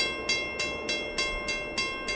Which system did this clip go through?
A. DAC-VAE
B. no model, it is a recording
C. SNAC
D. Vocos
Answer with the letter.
B